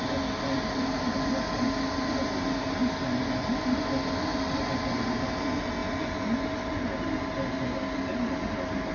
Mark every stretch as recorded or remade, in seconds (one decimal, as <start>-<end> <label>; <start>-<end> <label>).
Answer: 0.0-8.9 recorded